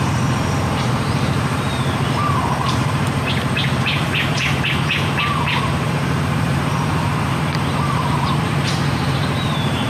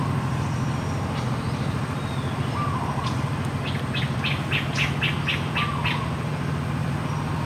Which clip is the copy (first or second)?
first